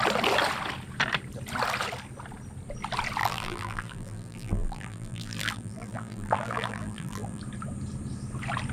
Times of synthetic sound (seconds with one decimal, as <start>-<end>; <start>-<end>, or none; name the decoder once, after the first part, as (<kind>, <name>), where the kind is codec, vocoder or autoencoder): 3.2-7.4 (vocoder, BigVGAN v2)